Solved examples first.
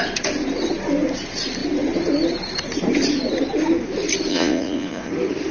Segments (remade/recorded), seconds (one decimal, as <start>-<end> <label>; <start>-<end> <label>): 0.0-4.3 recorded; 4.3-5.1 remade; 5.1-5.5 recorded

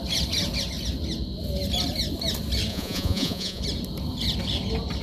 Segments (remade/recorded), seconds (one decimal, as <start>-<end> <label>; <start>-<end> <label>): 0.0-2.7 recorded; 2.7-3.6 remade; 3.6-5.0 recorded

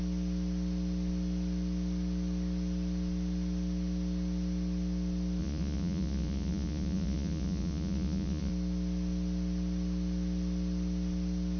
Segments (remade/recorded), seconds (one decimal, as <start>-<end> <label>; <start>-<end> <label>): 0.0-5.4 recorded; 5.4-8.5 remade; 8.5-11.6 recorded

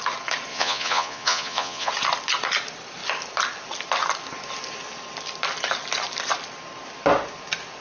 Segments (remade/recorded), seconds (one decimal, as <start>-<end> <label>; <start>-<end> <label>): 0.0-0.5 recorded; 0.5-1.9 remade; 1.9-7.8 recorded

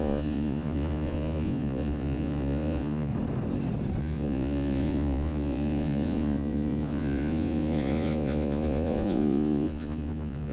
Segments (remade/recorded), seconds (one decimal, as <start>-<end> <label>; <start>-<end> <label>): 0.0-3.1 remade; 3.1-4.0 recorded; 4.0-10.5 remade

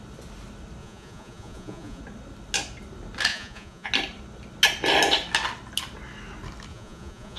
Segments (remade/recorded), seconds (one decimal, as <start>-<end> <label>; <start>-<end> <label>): 0.0-0.8 recorded; 0.8-2.0 remade; 2.0-3.3 recorded; 3.3-3.9 remade; 3.9-6.7 recorded; 6.7-7.4 remade

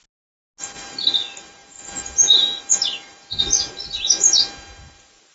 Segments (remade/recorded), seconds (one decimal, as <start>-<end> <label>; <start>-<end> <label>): 0.0-5.3 recorded

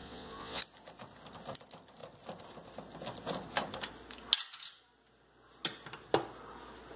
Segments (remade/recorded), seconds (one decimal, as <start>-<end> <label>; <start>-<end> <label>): 0.0-0.6 remade; 0.6-7.0 recorded